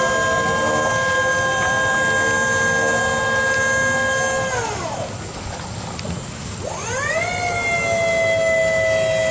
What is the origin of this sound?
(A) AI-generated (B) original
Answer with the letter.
B